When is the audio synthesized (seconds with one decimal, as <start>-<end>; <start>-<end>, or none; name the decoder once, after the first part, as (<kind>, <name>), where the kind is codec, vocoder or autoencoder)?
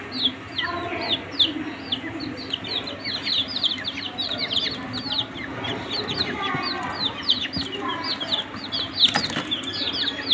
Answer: 3.4-4.5 (vocoder, BigVGAN v2)